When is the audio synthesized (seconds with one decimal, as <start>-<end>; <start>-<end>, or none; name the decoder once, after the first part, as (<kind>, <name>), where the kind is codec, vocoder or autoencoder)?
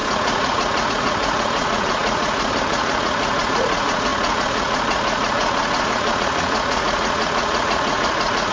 0.0-8.5 (vocoder, Vocos)